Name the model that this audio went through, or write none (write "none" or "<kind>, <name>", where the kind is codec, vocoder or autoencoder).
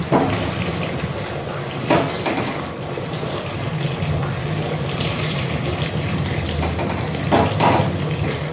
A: none